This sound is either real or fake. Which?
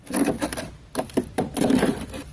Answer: real